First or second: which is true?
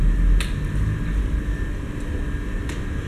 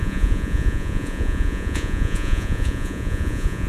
first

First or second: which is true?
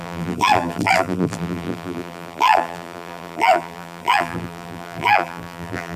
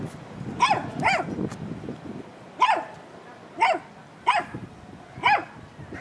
second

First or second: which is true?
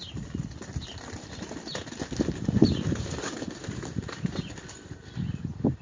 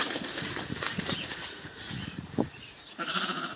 first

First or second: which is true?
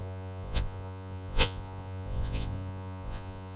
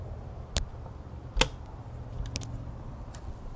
second